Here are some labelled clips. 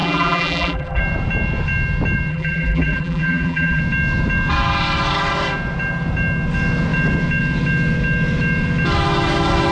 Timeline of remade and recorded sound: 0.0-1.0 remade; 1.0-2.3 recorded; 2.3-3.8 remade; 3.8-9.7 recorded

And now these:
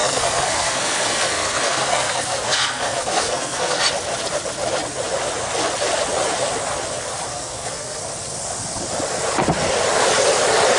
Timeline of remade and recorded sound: 0.0-3.8 remade; 3.8-7.3 recorded; 7.3-8.0 remade; 8.0-10.8 recorded